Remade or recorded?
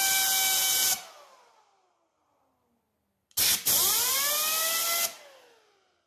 recorded